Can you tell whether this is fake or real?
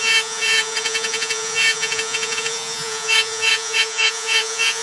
fake